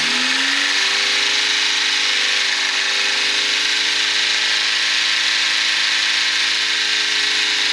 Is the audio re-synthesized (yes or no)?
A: no